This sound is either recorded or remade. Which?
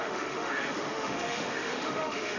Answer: remade